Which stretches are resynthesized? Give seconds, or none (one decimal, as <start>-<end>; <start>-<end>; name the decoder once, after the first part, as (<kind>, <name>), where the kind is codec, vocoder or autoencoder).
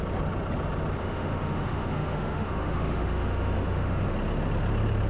1.0-4.1 (autoencoder, DAC-VAE)